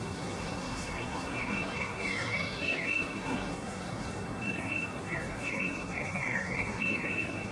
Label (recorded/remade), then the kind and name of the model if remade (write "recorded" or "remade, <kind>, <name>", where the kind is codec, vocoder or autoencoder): remade, codec, SNAC